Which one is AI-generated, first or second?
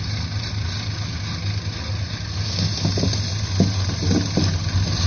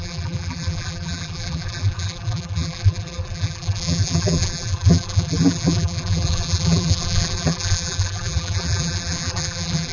second